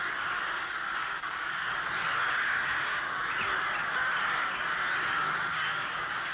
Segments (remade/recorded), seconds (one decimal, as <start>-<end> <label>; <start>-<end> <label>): 0.0-1.0 recorded; 1.0-1.7 remade; 1.7-2.4 recorded; 2.4-3.2 remade; 3.2-5.5 recorded; 5.5-6.3 remade